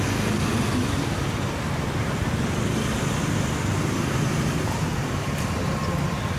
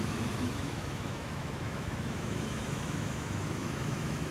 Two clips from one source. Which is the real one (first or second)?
first